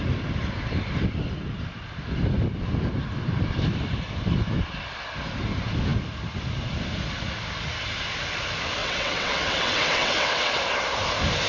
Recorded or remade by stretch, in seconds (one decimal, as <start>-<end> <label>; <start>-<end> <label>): 0.0-8.8 recorded; 8.8-10.5 remade; 10.5-11.5 recorded